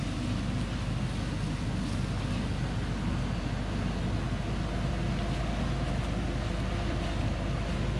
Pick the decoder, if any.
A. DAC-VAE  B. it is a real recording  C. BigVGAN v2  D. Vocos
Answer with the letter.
B